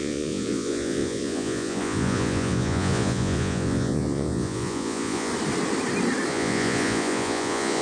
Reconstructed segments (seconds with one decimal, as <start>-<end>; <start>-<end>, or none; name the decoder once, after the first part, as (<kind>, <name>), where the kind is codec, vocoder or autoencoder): 0.0-5.3 (vocoder, Vocos); 6.3-7.8

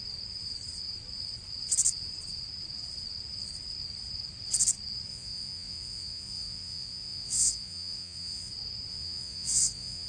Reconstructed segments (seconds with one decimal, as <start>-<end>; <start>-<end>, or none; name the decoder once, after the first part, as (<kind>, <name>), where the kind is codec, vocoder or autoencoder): 5.1-8.5 (vocoder, Vocos); 8.9-10.1

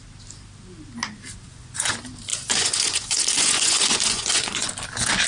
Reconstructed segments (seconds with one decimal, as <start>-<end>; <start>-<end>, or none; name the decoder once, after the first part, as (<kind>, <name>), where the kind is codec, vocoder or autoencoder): 1.4-1.9 (vocoder, Vocos); 2.3-4.7

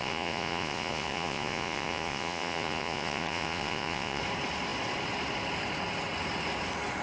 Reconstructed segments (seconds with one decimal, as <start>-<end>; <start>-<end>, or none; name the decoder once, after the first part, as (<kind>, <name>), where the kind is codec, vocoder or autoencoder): 0.0-4.2 (vocoder, Vocos)

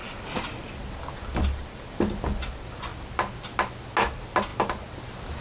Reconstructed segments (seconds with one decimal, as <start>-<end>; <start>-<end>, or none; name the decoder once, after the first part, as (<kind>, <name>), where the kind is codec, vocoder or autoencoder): none

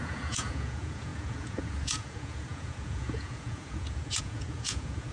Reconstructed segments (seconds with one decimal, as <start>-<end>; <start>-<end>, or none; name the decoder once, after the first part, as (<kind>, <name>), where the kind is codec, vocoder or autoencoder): 0.0-5.1 (vocoder, Vocos)

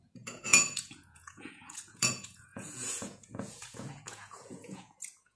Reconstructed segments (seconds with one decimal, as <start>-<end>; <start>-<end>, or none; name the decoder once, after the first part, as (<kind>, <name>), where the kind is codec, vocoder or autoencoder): 0.0-5.4 (vocoder, Vocos)